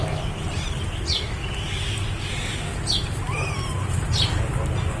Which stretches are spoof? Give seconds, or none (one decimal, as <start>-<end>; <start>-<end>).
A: 1.4-4.4

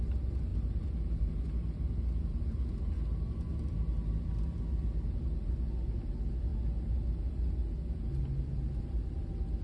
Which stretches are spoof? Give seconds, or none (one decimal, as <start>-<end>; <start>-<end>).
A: 0.5-1.5

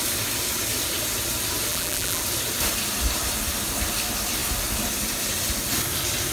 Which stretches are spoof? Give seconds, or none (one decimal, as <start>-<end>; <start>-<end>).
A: 1.7-2.2